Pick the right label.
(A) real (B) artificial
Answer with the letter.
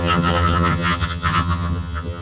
B